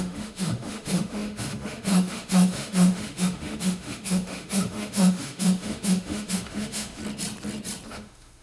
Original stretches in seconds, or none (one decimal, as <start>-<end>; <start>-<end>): 7.0-7.9